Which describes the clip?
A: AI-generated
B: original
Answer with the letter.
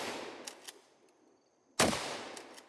B